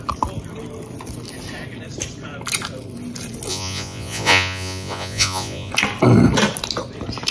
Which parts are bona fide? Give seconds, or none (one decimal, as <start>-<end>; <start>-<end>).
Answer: 0.0-3.5; 5.7-7.3